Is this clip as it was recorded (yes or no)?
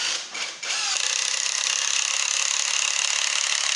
yes